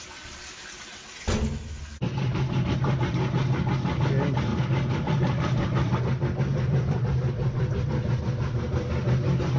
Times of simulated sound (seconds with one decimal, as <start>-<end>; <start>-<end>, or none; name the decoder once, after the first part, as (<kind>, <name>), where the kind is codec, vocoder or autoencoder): 4.5-6.0 (vocoder, BigVGAN v2); 6.5-7.9